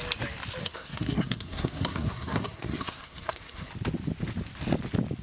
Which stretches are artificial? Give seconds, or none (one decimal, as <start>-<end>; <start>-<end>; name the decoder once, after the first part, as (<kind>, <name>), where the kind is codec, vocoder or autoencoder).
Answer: 0.6-3.7 (codec, SNAC)